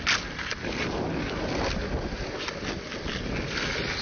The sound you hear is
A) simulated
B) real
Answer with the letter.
B